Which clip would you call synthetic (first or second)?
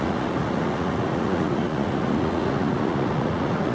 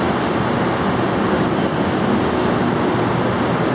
first